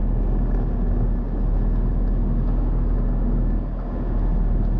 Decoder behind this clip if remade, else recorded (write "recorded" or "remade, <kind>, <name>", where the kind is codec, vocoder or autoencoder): recorded